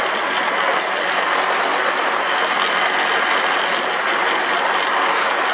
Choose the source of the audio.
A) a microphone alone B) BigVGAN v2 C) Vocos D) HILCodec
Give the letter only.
A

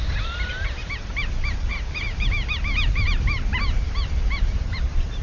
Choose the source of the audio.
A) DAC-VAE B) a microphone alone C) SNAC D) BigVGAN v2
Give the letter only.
D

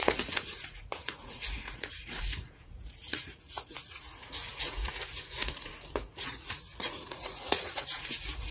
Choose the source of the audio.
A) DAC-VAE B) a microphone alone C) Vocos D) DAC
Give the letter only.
C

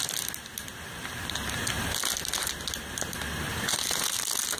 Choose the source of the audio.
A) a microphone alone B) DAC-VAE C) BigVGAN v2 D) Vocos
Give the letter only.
A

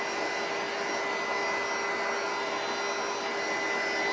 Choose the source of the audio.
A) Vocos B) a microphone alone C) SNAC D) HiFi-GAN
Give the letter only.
B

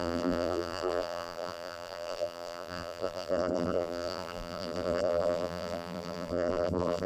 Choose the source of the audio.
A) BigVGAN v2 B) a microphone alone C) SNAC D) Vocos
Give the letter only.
A